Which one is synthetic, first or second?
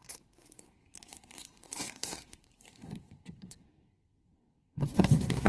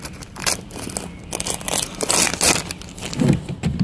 first